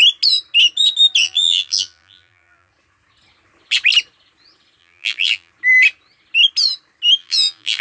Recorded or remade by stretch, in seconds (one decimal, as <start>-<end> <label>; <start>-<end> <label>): 0.0-1.2 recorded; 1.2-2.7 remade; 2.7-4.8 recorded; 4.8-5.5 remade; 5.5-7.2 recorded; 7.2-7.8 remade